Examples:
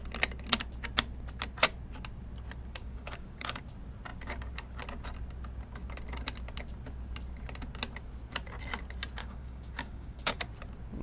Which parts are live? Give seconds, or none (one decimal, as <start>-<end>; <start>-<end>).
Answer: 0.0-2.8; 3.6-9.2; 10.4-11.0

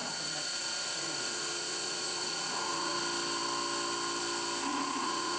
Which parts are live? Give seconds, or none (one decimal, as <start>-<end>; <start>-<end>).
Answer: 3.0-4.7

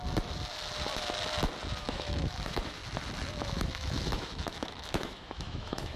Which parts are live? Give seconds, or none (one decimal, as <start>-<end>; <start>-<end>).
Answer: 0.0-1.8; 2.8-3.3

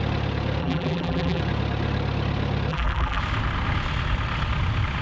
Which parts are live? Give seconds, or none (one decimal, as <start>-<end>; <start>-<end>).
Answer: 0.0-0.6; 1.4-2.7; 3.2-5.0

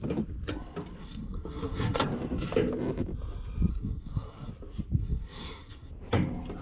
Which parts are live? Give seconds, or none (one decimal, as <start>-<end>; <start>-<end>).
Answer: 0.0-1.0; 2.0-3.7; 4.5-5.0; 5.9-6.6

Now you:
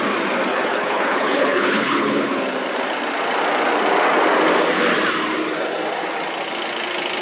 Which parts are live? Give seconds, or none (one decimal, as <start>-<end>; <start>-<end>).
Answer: 0.0-0.5; 2.4-7.2